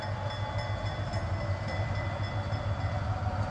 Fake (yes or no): no